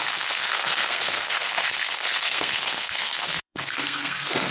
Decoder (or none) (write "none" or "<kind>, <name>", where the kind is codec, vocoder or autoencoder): codec, SNAC